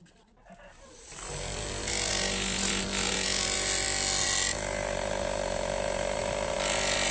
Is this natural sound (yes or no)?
yes